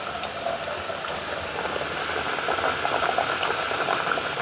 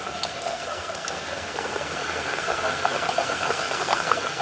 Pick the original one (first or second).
first